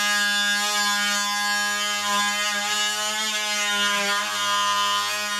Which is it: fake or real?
real